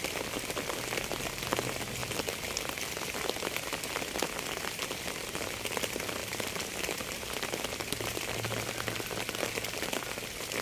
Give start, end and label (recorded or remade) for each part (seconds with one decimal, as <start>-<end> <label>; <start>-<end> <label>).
0.0-10.6 recorded

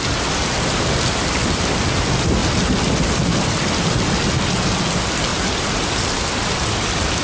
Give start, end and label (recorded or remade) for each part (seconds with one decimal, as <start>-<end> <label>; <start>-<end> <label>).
0.0-7.2 recorded

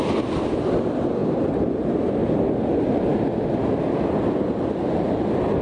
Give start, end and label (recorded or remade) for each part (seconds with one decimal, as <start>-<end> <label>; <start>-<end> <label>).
0.0-5.6 recorded

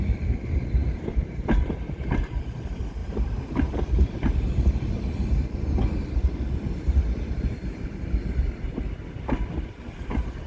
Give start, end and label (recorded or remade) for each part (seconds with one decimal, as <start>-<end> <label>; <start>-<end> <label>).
0.0-3.0 recorded; 3.0-3.5 remade; 3.5-10.5 recorded

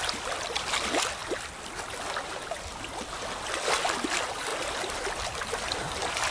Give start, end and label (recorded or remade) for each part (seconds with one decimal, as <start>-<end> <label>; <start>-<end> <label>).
0.0-6.3 recorded

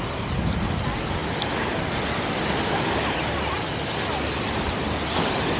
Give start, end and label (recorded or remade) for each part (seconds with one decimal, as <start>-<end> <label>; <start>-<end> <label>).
0.0-5.6 recorded